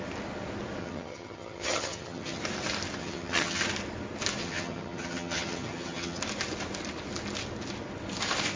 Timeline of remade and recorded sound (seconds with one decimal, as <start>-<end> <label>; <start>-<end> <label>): 0.0-0.8 recorded; 0.8-2.4 remade; 2.4-3.0 recorded; 3.0-3.6 remade; 3.6-4.4 recorded; 4.4-6.2 remade; 6.2-8.6 recorded